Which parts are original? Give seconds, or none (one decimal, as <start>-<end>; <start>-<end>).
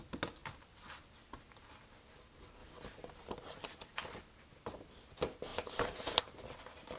0.0-7.0